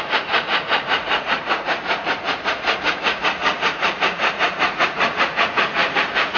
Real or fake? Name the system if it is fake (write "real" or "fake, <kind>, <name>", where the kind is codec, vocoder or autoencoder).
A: fake, vocoder, Vocos